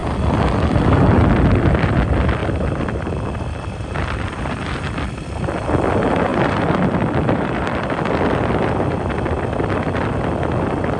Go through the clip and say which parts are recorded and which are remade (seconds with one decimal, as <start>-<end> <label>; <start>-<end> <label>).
0.0-2.4 recorded; 2.4-4.4 remade; 4.4-6.3 recorded; 6.3-9.4 remade; 9.4-11.0 recorded